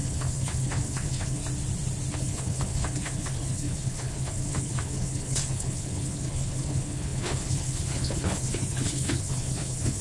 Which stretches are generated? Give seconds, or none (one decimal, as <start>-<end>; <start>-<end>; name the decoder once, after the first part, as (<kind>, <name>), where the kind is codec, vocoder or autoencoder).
0.0-1.4 (codec, HILCodec); 2.1-10.0